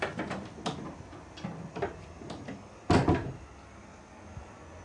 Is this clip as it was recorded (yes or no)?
yes